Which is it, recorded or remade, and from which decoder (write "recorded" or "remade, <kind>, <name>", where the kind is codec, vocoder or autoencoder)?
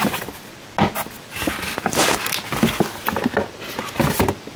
recorded